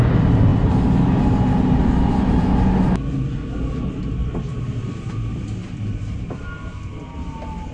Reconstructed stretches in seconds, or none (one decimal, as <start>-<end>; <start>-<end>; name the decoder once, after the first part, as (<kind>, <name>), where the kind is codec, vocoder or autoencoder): none